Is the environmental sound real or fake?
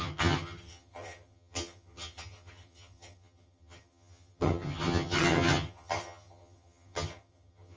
fake